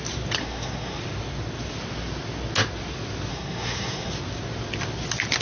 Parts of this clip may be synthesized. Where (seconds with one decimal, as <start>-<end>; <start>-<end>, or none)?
0.4-1.0; 3.3-4.1